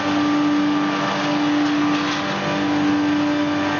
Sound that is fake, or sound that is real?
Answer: real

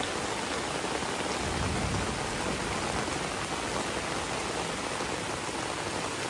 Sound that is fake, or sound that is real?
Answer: real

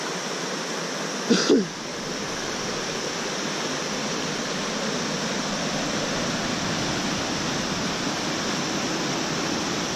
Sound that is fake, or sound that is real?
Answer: real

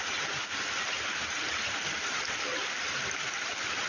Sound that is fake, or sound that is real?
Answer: real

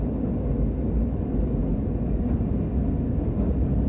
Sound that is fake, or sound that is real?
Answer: real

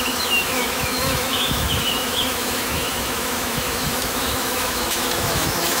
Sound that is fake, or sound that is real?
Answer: fake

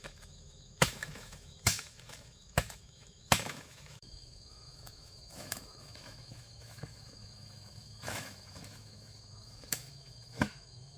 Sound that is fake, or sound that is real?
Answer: fake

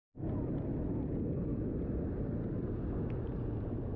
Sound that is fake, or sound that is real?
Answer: real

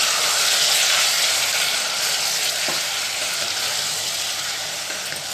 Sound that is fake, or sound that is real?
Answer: real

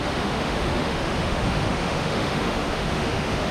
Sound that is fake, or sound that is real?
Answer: fake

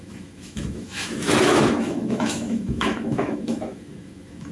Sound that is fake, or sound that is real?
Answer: fake